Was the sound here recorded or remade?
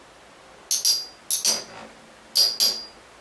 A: recorded